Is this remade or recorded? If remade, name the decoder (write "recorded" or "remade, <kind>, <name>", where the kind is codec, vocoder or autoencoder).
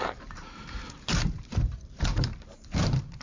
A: remade, vocoder, BigVGAN v2